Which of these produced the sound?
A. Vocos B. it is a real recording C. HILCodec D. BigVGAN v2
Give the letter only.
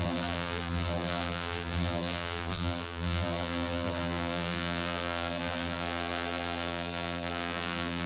D